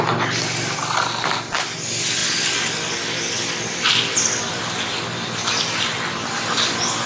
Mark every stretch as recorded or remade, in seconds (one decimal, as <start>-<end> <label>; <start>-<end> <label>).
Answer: 0.0-7.1 recorded